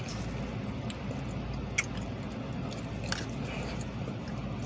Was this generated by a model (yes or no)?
no